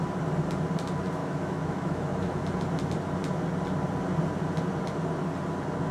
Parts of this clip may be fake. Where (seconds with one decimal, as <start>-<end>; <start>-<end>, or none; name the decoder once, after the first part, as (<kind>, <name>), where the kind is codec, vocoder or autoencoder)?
1.2-2.4 (autoencoder, DAC-VAE)